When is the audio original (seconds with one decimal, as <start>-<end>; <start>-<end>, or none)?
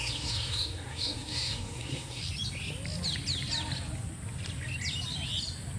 2.2-5.8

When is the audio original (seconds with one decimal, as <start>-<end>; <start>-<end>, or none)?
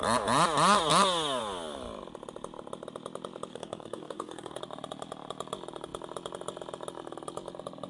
0.0-3.5; 4.6-7.9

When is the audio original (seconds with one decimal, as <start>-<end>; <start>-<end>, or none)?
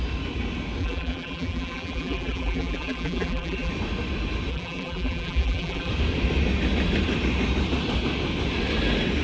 0.0-0.8; 3.7-4.5; 5.9-9.2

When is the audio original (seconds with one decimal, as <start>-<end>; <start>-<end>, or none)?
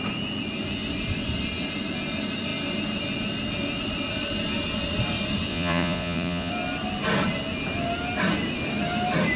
0.0-5.5; 6.5-9.4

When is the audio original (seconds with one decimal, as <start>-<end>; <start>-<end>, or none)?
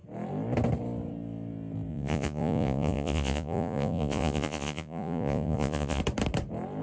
0.0-1.9; 6.0-6.8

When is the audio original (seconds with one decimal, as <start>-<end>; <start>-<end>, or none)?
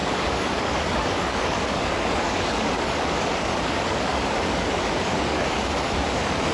none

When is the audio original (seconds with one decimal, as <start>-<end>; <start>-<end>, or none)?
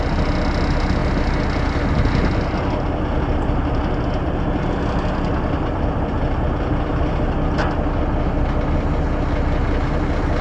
0.0-10.4